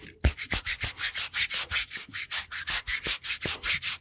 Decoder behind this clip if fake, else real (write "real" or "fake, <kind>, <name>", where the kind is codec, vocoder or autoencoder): real